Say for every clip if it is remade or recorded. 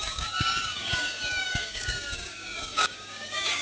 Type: remade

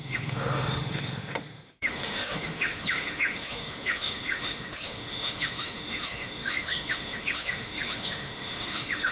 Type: remade